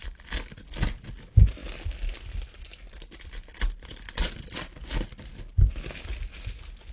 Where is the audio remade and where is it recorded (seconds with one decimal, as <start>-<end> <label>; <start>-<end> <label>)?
0.0-6.9 recorded